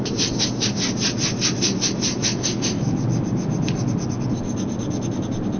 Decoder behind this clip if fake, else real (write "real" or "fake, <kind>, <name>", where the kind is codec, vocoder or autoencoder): real